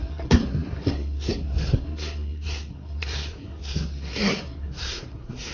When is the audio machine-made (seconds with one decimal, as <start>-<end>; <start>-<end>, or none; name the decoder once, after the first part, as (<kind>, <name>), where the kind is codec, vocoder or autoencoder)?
0.0-5.5 (codec, SNAC)